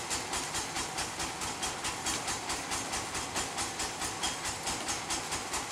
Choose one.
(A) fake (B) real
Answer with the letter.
B